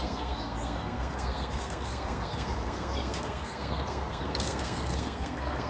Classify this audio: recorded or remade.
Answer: remade